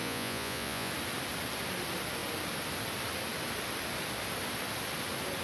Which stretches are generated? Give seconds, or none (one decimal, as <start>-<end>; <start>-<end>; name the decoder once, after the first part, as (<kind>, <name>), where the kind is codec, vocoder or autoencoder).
0.0-0.9 (vocoder, Vocos)